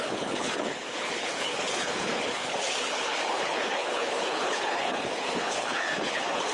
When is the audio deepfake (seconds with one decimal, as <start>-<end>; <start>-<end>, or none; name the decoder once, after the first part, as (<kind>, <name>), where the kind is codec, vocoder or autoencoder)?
0.0-6.5 (codec, HILCodec)